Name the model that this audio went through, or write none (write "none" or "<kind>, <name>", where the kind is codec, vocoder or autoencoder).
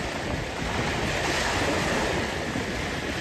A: none